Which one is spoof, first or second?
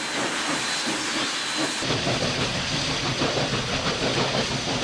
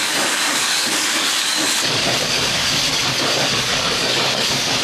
second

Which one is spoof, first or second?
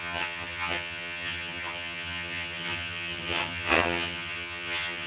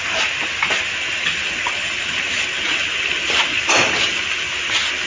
first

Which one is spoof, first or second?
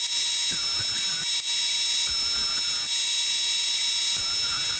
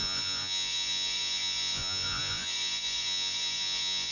second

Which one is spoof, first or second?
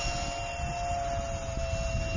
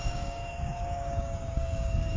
second